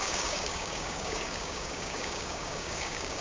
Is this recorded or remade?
remade